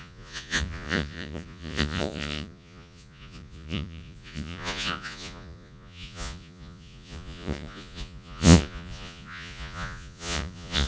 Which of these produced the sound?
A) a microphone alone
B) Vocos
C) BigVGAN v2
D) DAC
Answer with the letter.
B